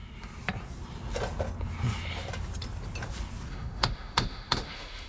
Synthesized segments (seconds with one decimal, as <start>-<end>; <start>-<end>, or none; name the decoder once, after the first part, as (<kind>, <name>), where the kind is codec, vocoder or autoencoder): 3.5-5.1 (autoencoder, DAC-VAE)